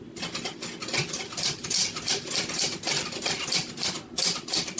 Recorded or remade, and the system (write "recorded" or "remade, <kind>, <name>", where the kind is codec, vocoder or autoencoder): recorded